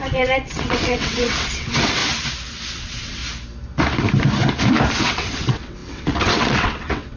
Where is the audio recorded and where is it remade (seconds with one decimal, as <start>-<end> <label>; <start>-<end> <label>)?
0.0-2.0 remade; 2.0-2.8 recorded; 2.8-3.2 remade; 3.2-5.0 recorded; 5.0-7.2 remade